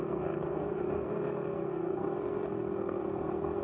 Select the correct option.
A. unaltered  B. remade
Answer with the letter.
B